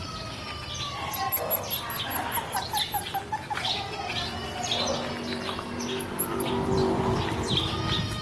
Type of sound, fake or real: real